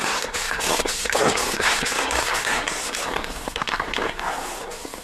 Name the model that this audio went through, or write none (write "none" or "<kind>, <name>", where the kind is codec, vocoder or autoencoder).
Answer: codec, SNAC